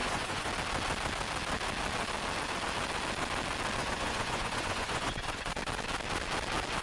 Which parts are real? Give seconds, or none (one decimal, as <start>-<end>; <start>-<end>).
0.5-3.8; 5.5-6.8